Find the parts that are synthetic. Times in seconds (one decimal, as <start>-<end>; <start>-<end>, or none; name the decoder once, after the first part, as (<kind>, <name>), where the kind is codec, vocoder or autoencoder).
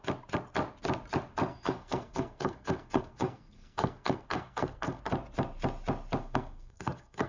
1.5-5.0 (codec, SNAC); 6.2-7.3